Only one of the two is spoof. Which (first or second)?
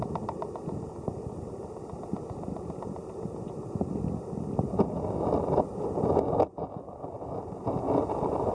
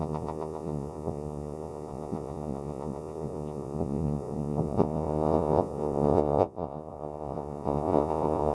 second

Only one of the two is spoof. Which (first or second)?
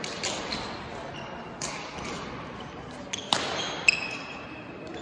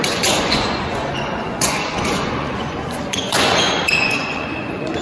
second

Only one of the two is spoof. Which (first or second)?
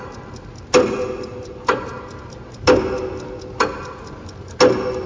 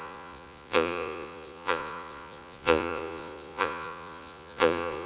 second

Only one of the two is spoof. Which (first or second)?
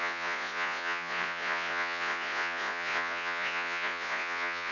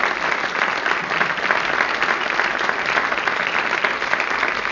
first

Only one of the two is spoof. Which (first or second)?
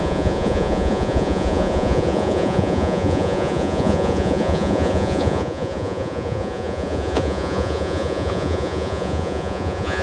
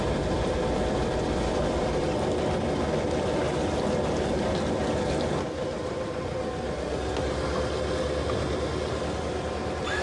first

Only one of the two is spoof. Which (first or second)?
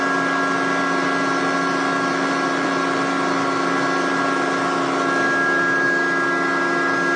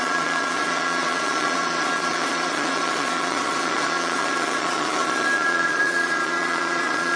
second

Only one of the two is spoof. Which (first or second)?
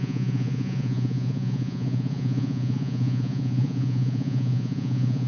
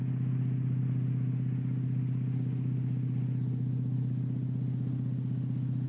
first